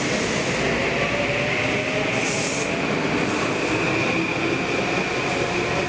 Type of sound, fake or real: real